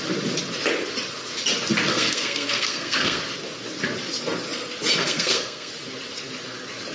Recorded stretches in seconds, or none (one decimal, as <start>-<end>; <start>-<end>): 0.0-1.9; 3.2-5.0; 5.7-6.9